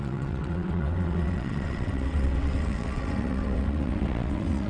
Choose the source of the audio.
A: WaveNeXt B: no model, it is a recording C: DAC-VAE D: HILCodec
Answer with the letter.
A